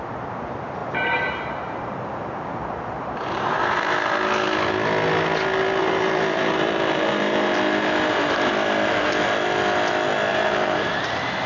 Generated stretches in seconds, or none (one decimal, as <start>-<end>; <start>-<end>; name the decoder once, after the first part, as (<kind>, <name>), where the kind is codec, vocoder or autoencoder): 0.8-4.2 (vocoder, BigVGAN v2); 5.8-8.5; 10.3-10.9